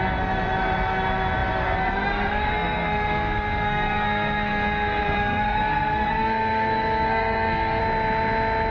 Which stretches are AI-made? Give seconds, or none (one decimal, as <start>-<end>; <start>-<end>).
0.0-7.8

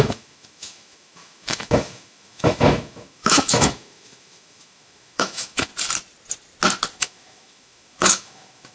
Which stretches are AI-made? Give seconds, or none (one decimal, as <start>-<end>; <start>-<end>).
0.0-5.7; 7.0-8.7

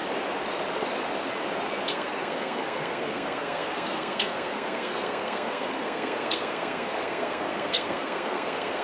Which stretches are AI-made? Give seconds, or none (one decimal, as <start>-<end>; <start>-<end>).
1.9-8.8

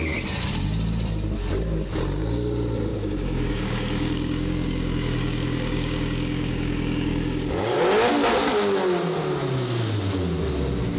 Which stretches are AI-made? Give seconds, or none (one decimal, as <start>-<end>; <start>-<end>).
2.9-7.8

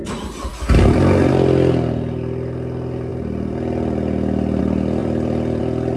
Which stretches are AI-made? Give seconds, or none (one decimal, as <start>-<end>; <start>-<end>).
3.1-4.6; 5.0-5.6

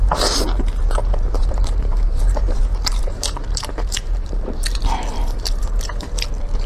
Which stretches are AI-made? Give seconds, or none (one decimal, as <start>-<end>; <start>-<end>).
1.0-2.5; 2.9-5.9